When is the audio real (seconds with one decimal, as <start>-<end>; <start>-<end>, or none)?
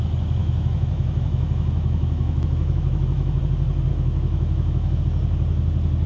0.0-0.4; 3.4-3.9; 5.0-6.1